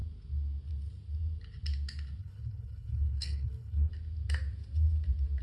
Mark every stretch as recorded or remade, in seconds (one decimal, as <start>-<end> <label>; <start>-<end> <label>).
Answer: 0.0-2.2 recorded; 2.2-3.9 remade; 3.9-5.4 recorded